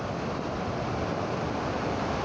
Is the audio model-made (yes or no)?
no